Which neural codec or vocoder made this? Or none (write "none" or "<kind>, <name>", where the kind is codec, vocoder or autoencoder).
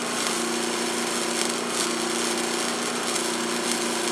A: none